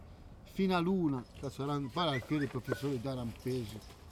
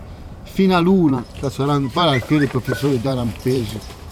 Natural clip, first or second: first